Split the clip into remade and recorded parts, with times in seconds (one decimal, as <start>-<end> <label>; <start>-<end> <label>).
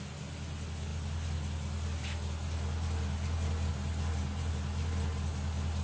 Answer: 0.0-5.8 recorded